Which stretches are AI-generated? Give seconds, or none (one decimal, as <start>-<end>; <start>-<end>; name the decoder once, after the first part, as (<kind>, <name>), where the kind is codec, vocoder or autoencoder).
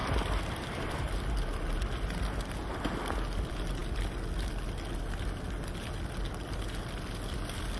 none